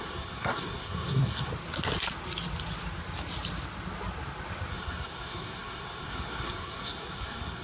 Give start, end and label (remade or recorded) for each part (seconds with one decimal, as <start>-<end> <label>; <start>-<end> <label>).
0.0-1.5 remade; 1.5-4.7 recorded; 4.7-7.6 remade